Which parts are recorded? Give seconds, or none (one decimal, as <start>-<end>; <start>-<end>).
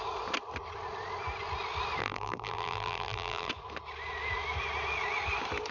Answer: 0.0-2.0; 3.5-5.7